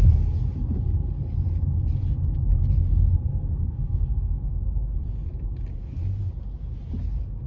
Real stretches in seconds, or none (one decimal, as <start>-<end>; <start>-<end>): 0.0-3.3; 4.5-7.5